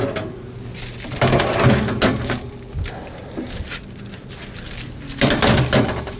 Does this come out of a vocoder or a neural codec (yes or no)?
no